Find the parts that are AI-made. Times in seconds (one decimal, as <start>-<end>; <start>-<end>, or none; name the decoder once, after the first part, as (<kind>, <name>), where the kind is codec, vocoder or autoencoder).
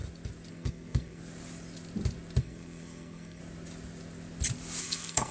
0.5-1.2 (codec, SNAC); 2.4-3.4; 4.8-5.3